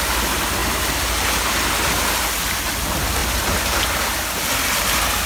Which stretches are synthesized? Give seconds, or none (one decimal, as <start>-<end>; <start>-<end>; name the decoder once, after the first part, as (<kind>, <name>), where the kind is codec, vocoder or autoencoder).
none